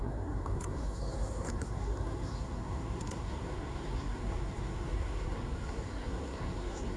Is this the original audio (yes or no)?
no